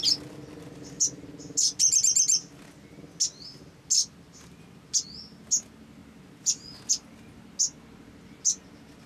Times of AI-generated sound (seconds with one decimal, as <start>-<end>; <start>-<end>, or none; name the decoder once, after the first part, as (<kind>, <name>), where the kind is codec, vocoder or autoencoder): none